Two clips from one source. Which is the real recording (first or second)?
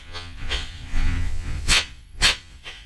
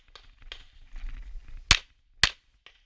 second